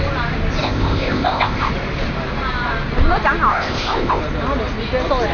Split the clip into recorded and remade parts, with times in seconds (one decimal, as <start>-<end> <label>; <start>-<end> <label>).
0.0-0.6 recorded; 0.6-1.7 remade; 1.7-3.5 recorded; 3.5-4.2 remade; 4.2-5.3 recorded